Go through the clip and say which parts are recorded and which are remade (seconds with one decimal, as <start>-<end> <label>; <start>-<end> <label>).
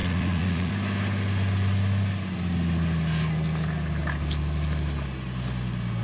0.0-0.7 remade; 0.7-6.0 recorded